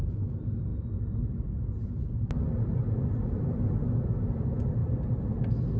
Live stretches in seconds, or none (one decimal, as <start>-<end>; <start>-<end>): 0.0-5.8